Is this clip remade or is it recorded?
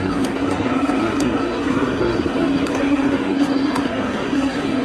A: remade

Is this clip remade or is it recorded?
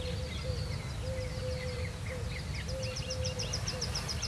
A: recorded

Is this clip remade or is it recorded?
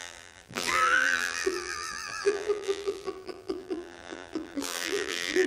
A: remade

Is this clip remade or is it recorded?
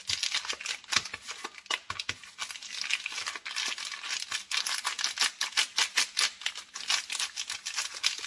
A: recorded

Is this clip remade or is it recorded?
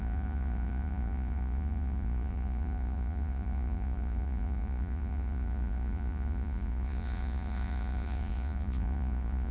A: remade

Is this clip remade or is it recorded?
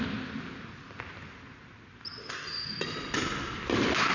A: recorded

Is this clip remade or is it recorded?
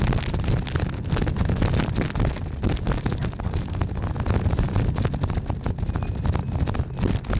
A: recorded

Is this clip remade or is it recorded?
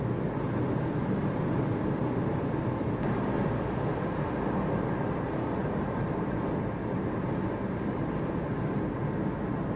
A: recorded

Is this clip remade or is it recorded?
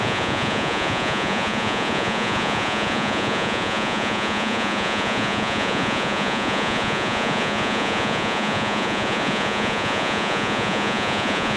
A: remade